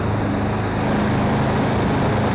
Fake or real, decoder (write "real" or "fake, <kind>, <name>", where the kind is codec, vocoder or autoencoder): real